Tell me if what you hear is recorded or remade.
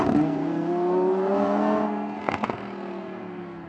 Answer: remade